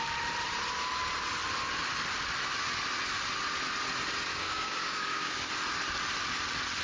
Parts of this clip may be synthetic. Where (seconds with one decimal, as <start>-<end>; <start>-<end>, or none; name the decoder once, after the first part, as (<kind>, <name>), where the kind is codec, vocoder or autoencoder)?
4.3-5.5 (codec, DAC)